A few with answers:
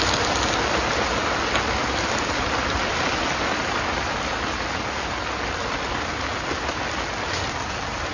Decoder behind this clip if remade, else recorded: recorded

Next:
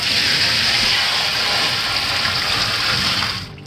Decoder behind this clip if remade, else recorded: recorded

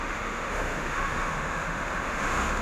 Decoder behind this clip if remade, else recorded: remade, autoencoder, DAC-VAE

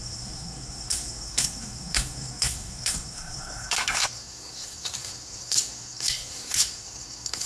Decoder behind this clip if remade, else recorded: remade, codec, SNAC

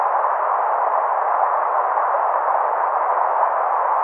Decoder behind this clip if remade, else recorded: recorded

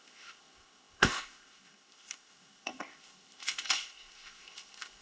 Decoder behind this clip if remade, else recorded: remade, codec, ZipCodec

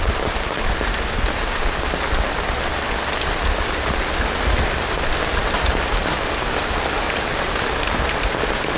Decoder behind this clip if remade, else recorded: recorded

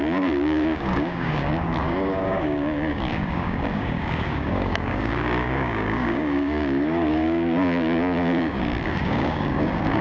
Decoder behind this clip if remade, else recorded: remade, codec, DAC